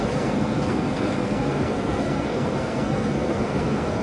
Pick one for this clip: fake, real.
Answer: fake